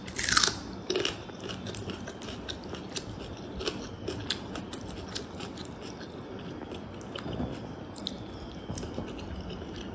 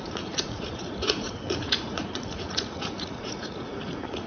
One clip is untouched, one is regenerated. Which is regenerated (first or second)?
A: second